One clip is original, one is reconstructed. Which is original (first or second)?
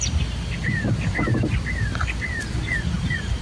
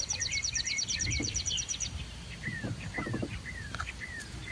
first